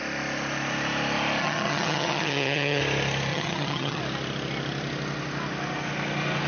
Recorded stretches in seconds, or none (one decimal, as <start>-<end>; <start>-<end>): 0.0-1.4; 2.8-3.3; 4.0-6.5